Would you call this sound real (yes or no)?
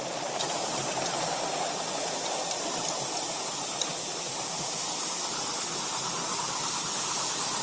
yes